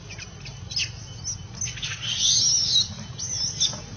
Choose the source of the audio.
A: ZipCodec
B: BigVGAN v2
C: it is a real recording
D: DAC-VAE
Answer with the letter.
C